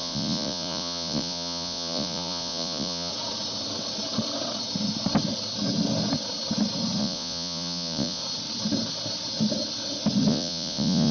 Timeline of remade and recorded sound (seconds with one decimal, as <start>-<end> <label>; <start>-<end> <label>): 0.0-3.1 remade; 3.1-7.0 recorded; 7.0-8.2 remade; 8.2-10.3 recorded; 10.3-11.1 remade